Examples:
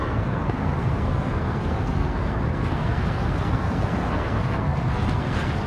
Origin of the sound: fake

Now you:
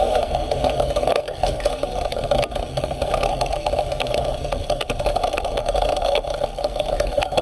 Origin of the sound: fake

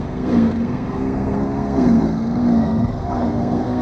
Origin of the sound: fake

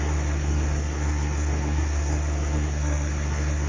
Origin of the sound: fake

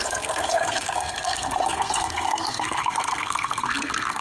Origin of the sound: fake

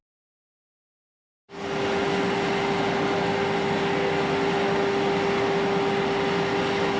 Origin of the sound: real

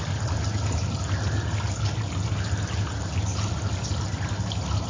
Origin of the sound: real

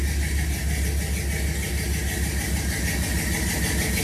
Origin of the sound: real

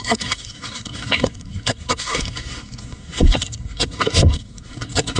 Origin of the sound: fake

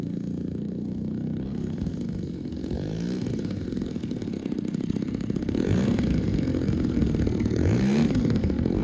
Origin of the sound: fake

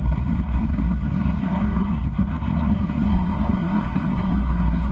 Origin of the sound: fake